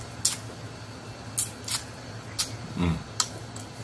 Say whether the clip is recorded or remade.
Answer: recorded